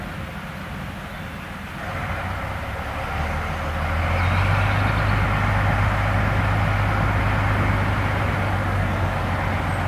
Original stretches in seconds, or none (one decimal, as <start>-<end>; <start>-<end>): 0.0-8.6; 9.3-9.9